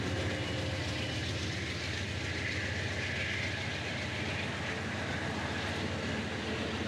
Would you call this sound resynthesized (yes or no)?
no